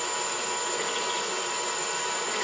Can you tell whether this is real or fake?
real